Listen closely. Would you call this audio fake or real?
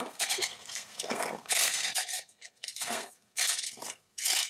fake